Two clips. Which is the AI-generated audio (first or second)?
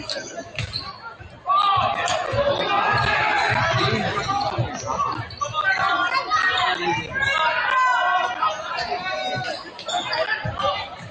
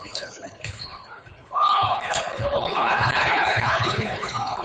second